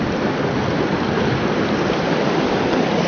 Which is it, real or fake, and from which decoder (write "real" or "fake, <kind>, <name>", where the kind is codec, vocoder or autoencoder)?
real